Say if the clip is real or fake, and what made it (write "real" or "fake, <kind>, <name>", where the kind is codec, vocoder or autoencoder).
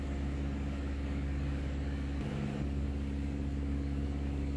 fake, codec, DAC